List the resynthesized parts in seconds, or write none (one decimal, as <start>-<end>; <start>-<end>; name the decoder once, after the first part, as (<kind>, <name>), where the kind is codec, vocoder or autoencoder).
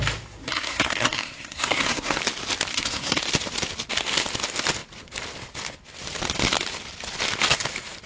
0.4-2.2 (codec, SNAC); 2.7-3.2